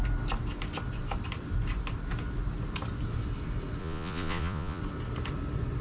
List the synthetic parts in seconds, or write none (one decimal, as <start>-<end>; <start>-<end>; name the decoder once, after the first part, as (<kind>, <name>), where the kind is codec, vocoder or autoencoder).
3.8-4.8 (vocoder, Vocos)